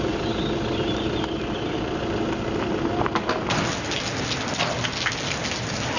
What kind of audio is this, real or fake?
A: real